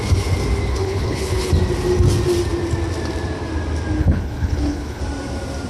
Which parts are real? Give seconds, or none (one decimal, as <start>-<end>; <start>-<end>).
0.0-0.7; 1.5-4.0; 5.0-5.7